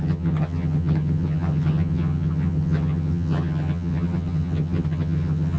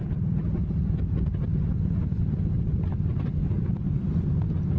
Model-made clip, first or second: first